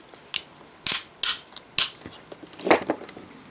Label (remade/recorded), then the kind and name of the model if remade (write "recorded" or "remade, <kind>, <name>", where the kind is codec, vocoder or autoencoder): recorded